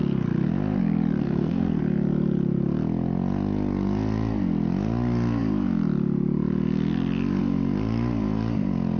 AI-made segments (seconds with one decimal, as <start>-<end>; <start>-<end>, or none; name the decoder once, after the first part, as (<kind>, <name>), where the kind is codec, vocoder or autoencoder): 1.2-1.8 (codec, SNAC)

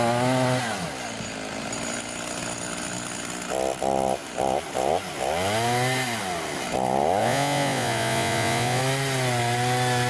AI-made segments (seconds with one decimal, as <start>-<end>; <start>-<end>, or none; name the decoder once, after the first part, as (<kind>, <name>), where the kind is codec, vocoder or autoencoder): 7.2-8.8 (vocoder, Vocos)

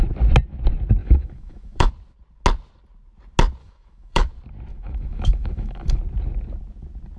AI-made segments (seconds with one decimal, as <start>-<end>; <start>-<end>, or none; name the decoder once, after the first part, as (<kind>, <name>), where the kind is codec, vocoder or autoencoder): 1.0-1.9 (autoencoder, DAC-VAE); 3.6-4.3; 4.7-6.0